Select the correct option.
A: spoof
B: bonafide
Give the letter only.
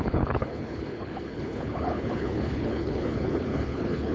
A